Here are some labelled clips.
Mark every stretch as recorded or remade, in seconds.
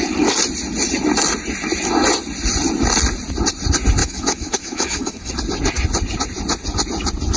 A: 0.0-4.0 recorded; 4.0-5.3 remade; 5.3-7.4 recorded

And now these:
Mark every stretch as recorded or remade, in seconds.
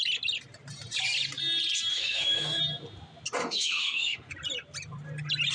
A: 0.0-1.9 recorded; 1.9-2.6 remade; 2.6-3.4 recorded; 3.4-4.3 remade; 4.3-5.5 recorded